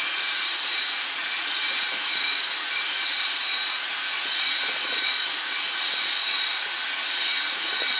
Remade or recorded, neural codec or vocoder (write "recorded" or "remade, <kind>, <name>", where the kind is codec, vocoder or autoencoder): remade, vocoder, Vocos